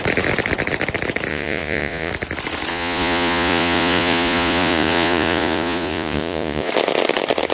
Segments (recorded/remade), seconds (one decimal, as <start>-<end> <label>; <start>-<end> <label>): 0.0-1.3 recorded; 1.3-2.1 remade; 2.1-2.7 recorded; 2.7-6.7 remade; 6.7-7.5 recorded